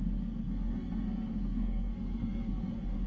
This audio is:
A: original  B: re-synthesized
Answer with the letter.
B